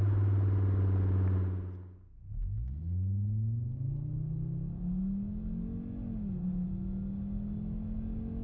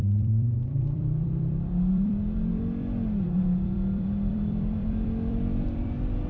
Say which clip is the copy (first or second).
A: second